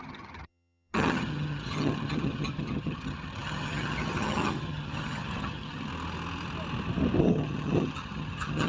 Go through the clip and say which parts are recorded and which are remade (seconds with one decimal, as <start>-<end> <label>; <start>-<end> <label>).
0.0-5.9 remade; 5.9-7.2 recorded; 7.2-8.7 remade